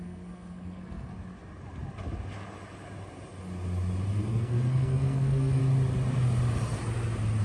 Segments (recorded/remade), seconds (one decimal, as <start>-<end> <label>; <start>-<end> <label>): 0.0-1.1 remade; 1.1-4.3 recorded; 4.3-5.6 remade; 5.6-7.4 recorded